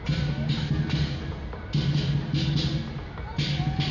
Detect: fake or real real